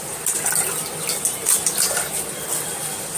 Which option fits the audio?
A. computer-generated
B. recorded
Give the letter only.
B